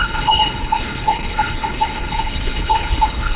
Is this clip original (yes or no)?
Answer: no